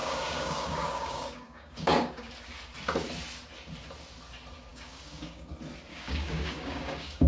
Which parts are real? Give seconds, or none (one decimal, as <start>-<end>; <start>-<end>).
2.3-4.7; 5.5-5.9